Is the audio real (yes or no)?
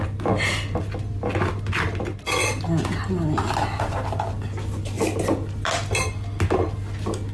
yes